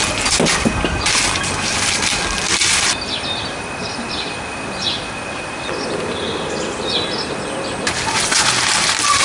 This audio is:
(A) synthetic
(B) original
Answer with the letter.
B